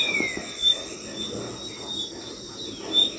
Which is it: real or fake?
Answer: real